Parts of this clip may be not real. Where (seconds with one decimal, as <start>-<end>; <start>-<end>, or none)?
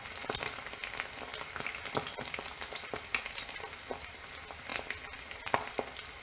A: none